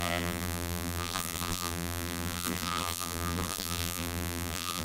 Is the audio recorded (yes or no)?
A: no